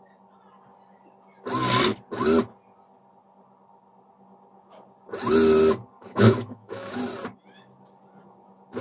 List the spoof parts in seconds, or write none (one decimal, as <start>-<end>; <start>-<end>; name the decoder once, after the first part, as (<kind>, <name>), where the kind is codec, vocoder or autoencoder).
6.0-7.0 (autoencoder, DAC-VAE)